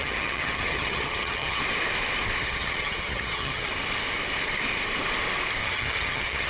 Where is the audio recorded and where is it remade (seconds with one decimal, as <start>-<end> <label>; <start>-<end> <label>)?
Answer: 0.0-1.6 remade; 1.6-2.4 recorded; 2.4-3.7 remade; 3.7-5.6 recorded; 5.6-6.5 remade